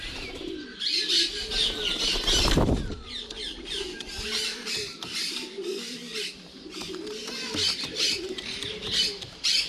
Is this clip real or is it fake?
real